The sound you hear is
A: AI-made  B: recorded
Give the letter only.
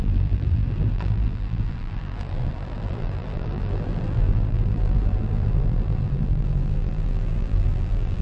A